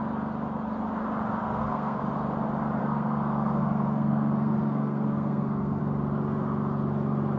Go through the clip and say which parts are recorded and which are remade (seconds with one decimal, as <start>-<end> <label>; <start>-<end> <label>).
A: 0.0-1.4 recorded; 1.4-2.0 remade; 2.0-2.8 recorded; 2.8-5.8 remade; 5.8-7.4 recorded